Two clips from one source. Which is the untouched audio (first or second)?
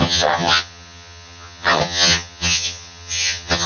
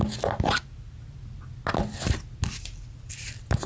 second